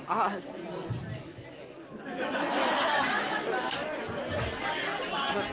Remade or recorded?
recorded